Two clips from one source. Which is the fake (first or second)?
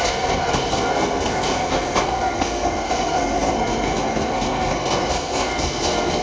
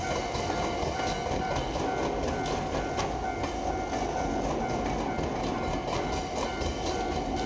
first